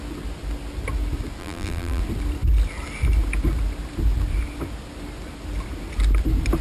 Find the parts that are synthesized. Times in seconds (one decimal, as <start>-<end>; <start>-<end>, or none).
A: 1.4-2.0